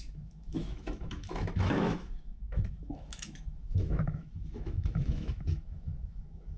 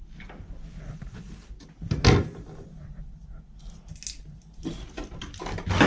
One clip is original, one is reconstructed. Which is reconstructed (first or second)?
first